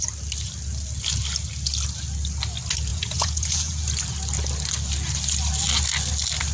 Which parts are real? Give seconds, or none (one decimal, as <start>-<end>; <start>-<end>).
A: 0.0-2.9; 3.9-6.5